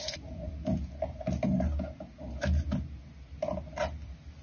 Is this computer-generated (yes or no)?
no